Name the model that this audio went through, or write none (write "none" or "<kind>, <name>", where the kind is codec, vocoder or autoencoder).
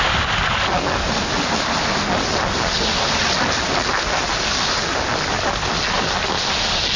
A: none